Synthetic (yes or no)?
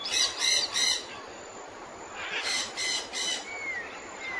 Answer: yes